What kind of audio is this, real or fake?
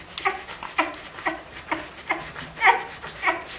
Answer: real